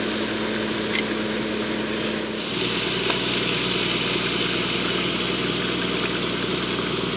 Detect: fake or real real